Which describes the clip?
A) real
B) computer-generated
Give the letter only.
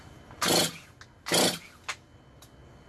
A